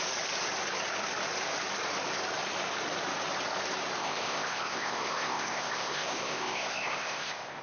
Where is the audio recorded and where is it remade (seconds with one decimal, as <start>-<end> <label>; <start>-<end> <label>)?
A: 0.0-4.0 recorded; 4.0-7.6 remade